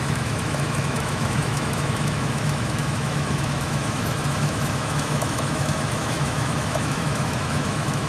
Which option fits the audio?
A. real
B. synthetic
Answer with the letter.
B